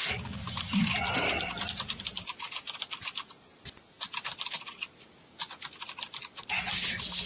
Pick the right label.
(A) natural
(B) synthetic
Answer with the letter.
A